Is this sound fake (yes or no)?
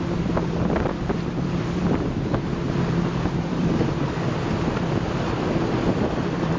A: yes